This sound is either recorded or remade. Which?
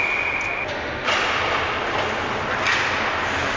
recorded